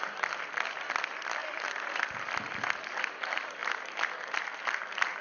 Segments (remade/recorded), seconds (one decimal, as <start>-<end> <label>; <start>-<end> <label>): 0.0-5.2 recorded

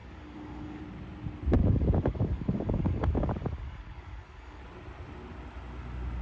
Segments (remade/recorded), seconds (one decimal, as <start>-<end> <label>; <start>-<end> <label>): 0.0-0.8 remade; 0.8-1.6 recorded; 1.6-4.6 remade; 4.6-6.2 recorded

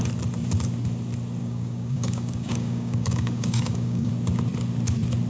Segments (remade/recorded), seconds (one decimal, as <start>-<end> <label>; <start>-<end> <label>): 0.0-1.4 recorded; 1.4-4.1 remade; 4.1-5.3 recorded

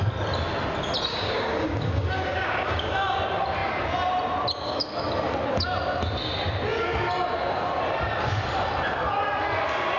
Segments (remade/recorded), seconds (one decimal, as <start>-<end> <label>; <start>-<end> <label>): 0.0-1.1 recorded; 1.1-3.2 remade; 3.2-10.0 recorded

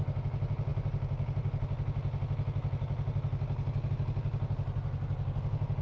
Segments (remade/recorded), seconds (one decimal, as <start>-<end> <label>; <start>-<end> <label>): 0.0-5.8 recorded

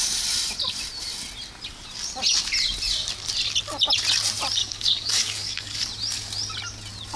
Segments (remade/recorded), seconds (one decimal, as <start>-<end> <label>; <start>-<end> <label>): 0.0-4.6 recorded; 4.6-5.9 remade; 5.9-7.2 recorded

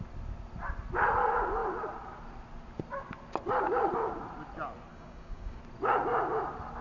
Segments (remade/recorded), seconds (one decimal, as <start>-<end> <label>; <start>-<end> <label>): 0.0-4.9 recorded; 4.9-5.6 remade; 5.6-6.8 recorded

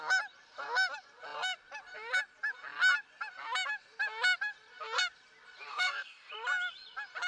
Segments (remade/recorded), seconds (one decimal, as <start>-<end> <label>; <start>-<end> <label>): 0.0-5.7 recorded; 5.7-6.3 remade; 6.3-7.3 recorded